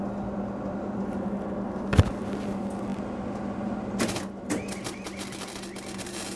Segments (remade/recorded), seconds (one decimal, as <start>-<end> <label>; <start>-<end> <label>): 0.0-6.4 recorded